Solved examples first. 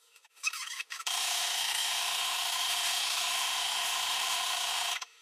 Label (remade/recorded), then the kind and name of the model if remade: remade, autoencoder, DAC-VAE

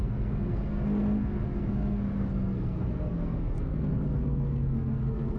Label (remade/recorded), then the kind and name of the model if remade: remade, codec, SNAC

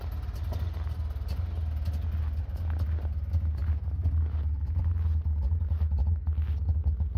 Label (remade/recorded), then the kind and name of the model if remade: recorded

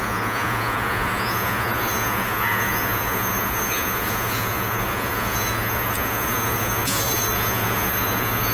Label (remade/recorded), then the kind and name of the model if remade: remade, vocoder, Vocos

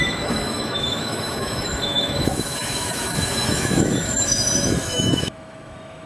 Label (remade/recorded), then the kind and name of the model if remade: remade, autoencoder, DAC-VAE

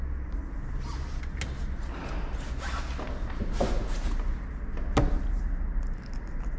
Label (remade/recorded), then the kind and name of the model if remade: recorded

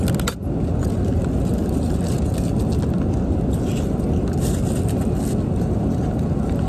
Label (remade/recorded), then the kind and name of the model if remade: recorded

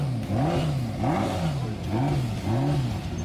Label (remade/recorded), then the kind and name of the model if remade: recorded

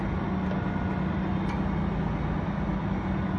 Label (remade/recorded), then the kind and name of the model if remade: recorded